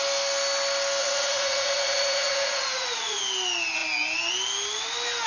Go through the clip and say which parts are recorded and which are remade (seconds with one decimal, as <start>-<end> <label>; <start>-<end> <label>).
0.0-1.0 recorded; 1.0-3.2 remade; 3.2-5.3 recorded